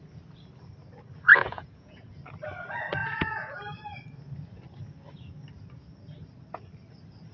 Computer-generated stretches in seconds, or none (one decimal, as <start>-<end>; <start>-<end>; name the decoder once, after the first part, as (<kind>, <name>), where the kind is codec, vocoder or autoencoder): 1.3-2.1 (vocoder, Vocos); 3.0-3.6